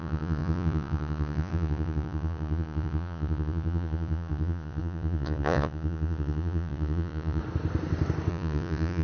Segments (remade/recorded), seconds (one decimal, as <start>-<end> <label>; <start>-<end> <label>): 0.0-7.4 remade; 7.4-8.3 recorded; 8.3-9.0 remade